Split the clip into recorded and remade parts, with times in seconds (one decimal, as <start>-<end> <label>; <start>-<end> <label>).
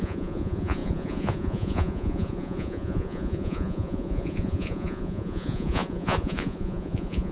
0.0-7.3 remade